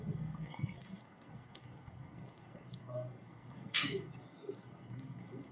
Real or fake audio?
fake